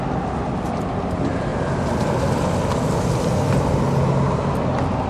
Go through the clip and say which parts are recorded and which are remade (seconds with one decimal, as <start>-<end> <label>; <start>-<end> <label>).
0.0-5.1 recorded